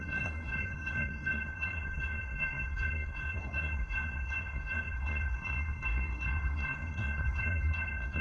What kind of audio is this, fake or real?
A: fake